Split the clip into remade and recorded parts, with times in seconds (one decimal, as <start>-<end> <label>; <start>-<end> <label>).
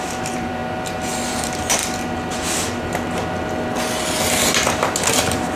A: 0.0-0.6 remade; 0.6-1.3 recorded; 1.3-1.8 remade; 1.8-5.1 recorded; 5.1-5.6 remade